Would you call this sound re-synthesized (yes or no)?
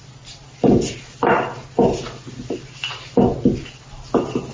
no